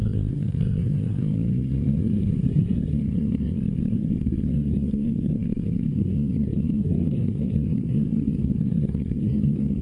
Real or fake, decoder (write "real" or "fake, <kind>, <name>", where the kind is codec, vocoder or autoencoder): fake, codec, SNAC